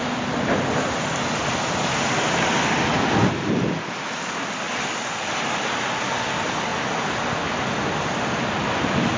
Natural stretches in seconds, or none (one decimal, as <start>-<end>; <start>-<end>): 0.0-9.2